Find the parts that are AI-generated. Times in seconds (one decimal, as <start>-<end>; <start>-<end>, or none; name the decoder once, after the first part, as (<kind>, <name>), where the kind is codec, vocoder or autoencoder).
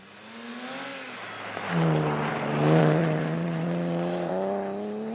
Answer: 2.8-4.3 (vocoder, Vocos)